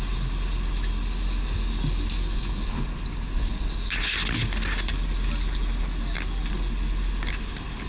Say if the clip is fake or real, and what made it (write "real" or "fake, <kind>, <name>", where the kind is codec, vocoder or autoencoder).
real